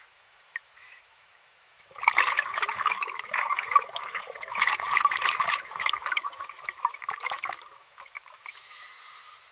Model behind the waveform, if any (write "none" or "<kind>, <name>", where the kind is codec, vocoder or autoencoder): autoencoder, DAC-VAE